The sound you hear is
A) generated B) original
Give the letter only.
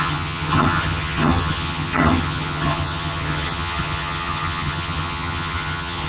A